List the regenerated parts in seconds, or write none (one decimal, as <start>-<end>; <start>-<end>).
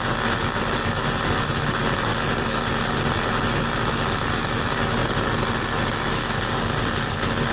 none